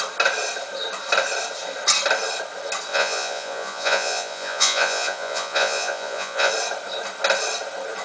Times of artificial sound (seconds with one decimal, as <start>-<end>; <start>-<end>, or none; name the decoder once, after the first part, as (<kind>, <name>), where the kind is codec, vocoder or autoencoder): 2.9-6.5 (vocoder, Vocos)

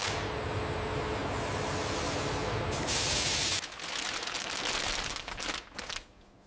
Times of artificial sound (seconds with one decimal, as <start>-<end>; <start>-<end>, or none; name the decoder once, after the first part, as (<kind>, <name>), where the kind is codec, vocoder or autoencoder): none

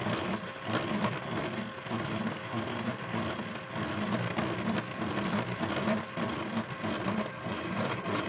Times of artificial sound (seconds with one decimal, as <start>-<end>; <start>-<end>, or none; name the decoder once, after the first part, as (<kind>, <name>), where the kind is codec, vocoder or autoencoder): 7.5-8.3 (vocoder, Vocos)

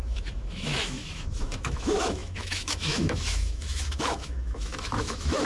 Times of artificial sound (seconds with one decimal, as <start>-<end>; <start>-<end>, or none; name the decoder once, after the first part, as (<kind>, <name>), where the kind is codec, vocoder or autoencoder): 0.0-5.5 (autoencoder, DAC-VAE)

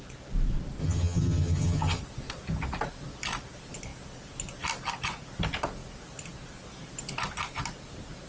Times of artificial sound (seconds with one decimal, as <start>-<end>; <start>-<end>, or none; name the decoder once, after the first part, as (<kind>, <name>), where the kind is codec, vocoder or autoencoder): 0.8-2.0 (vocoder, HiFi-GAN)

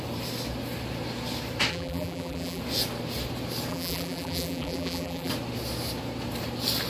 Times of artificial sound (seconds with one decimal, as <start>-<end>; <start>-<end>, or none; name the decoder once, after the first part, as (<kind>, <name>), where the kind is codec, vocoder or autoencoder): 1.7-2.6 (vocoder, BigVGAN v2); 3.7-5.3